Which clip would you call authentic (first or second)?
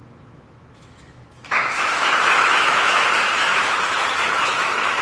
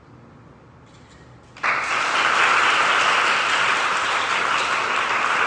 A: second